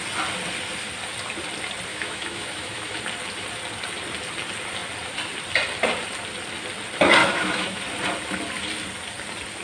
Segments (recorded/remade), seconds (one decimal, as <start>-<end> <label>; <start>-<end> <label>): 0.0-1.9 recorded; 1.9-3.0 remade; 3.0-7.2 recorded; 7.2-7.8 remade; 7.8-9.6 recorded

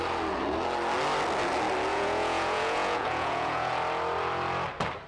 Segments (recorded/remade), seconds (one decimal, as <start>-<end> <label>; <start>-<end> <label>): 0.0-1.9 recorded; 1.9-3.7 remade; 3.7-5.1 recorded

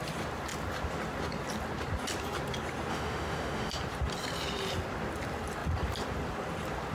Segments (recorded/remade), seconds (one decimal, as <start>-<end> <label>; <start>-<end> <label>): 0.0-2.9 recorded; 2.9-3.7 remade; 3.7-6.9 recorded

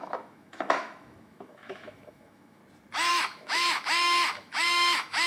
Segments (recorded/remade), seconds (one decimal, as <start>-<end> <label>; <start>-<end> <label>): 0.0-2.6 remade; 2.6-3.1 recorded; 3.1-5.3 remade

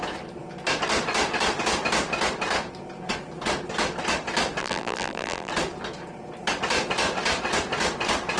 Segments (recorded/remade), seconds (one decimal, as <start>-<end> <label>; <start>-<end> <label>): 0.0-4.6 recorded; 4.6-5.5 remade; 5.5-8.4 recorded